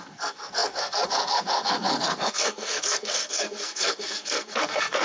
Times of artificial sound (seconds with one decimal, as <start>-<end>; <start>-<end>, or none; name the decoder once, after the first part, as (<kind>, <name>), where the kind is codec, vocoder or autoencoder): 0.0-5.0 (codec, SNAC)